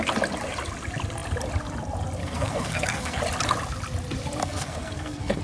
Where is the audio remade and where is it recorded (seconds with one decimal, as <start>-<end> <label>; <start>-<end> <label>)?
0.0-2.2 recorded; 2.2-3.2 remade; 3.2-4.4 recorded; 4.4-5.4 remade